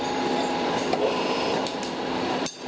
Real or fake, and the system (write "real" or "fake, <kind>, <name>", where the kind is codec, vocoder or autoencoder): fake, vocoder, BigVGAN v2